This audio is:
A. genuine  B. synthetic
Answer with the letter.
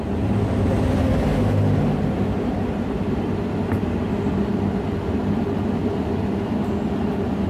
A